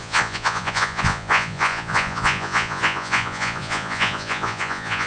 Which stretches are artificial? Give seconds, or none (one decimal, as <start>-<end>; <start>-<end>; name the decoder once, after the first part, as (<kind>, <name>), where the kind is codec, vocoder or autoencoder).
0.0-5.1 (vocoder, Vocos)